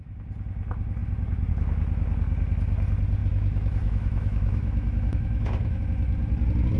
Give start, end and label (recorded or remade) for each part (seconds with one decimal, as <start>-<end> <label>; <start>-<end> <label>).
0.0-3.2 recorded; 3.2-5.8 remade; 5.8-6.8 recorded